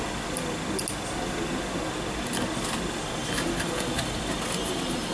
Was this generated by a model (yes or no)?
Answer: no